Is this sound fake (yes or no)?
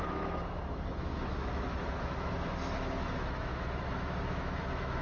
yes